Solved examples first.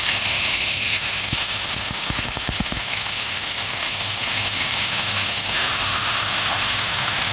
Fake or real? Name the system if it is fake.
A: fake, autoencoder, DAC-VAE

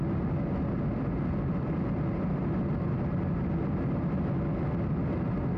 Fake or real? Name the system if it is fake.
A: real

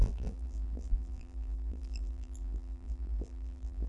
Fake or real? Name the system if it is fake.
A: fake, vocoder, BigVGAN v2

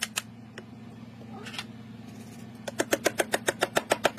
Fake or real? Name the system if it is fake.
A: real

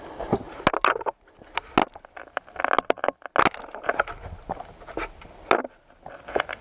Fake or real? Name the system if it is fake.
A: real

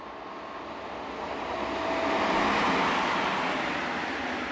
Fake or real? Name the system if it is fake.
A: real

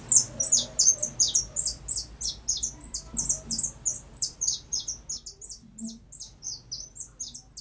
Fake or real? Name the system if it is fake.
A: real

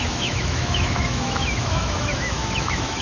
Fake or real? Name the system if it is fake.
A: fake, autoencoder, DAC-VAE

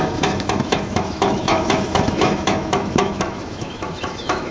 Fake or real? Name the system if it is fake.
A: fake, autoencoder, DAC-VAE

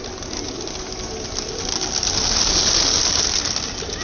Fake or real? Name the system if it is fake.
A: real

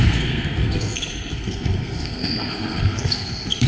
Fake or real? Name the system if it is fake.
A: fake, codec, SNAC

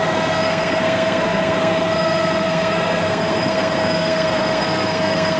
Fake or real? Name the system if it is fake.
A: fake, codec, SNAC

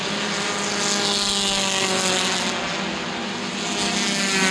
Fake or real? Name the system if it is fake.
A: real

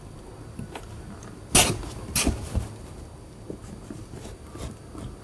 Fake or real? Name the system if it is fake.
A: real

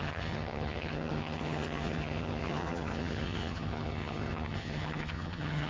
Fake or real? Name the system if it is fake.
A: fake, vocoder, HiFi-GAN